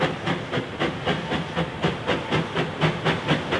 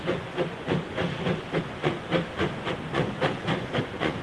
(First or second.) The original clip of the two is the first